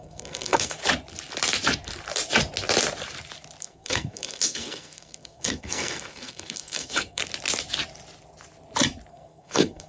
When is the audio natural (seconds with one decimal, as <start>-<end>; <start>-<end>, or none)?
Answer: 0.8-3.6; 7.2-9.1